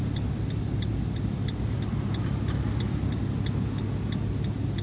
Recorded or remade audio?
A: recorded